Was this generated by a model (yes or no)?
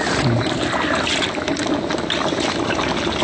no